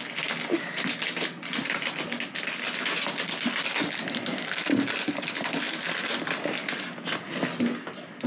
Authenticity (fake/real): real